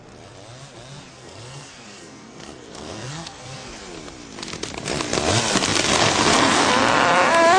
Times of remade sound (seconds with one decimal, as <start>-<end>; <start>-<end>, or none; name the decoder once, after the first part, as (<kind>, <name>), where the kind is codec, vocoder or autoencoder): 1.1-3.8 (codec, SNAC)